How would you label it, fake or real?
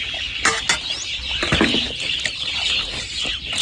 real